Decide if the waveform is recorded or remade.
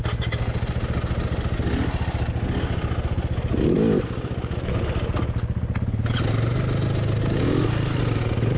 recorded